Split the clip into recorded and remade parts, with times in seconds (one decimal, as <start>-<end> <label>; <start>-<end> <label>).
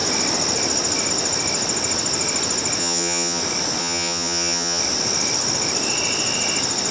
0.0-2.8 recorded; 2.8-3.4 remade; 3.4-3.8 recorded; 3.8-4.8 remade; 4.8-6.9 recorded